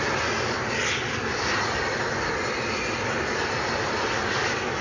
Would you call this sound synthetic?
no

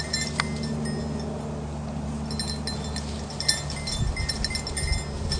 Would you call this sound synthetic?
no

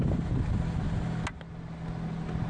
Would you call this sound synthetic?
no